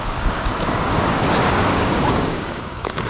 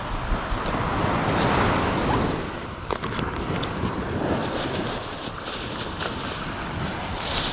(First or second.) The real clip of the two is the second